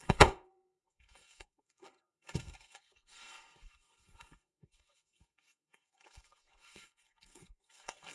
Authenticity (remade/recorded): remade